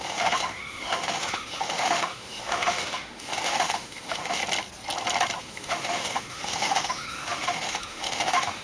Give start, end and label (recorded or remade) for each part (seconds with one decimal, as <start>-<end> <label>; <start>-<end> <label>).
0.0-4.4 remade; 4.4-5.4 recorded; 5.4-8.6 remade